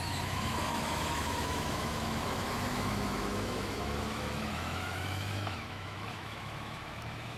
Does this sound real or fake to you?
fake